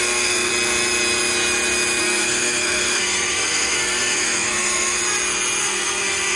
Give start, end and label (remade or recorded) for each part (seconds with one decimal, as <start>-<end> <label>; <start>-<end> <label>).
0.0-0.5 remade; 0.5-2.0 recorded; 2.0-5.0 remade; 5.0-5.6 recorded; 5.6-6.4 remade

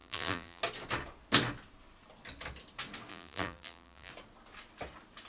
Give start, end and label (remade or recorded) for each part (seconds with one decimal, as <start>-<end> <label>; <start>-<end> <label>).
0.0-0.6 remade; 0.6-3.1 recorded; 3.1-4.1 remade; 4.1-5.3 recorded

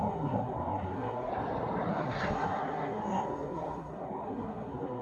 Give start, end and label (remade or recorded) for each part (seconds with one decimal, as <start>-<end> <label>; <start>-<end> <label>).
0.0-1.3 remade; 1.3-1.9 recorded; 1.9-5.0 remade

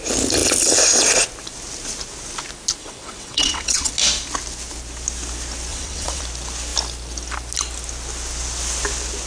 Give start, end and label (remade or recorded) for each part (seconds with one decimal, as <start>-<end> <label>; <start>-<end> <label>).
0.0-2.8 recorded; 2.8-3.9 remade; 3.9-5.7 recorded; 5.7-6.2 remade; 6.2-9.3 recorded

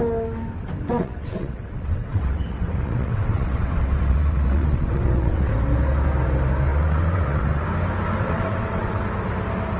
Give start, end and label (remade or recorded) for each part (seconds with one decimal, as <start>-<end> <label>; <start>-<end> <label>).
0.0-0.9 recorded; 0.9-5.5 remade; 5.5-6.7 recorded; 6.7-7.6 remade; 7.6-8.2 recorded; 8.2-9.0 remade; 9.0-9.8 recorded

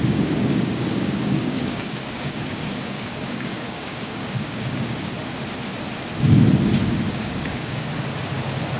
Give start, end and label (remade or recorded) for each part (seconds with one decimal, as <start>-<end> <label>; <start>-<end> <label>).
0.0-5.1 remade; 5.1-7.1 recorded; 7.1-7.9 remade; 7.9-8.8 recorded